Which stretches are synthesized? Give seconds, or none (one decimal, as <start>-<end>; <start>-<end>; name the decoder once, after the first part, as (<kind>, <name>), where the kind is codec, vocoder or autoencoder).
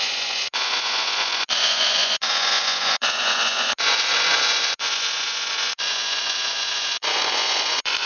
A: 0.0-8.1 (vocoder, Vocos)